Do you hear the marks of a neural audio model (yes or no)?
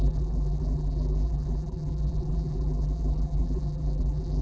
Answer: yes